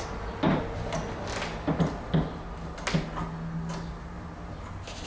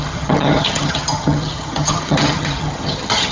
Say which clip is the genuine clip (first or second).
first